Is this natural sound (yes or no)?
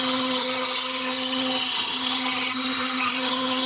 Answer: no